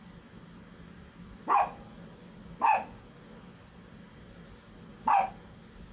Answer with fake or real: real